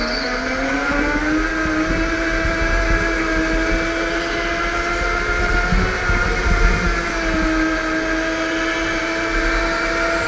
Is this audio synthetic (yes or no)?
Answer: no